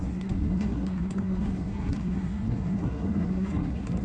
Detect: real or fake fake